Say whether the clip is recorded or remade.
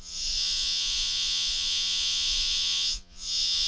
remade